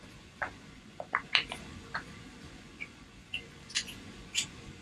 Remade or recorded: remade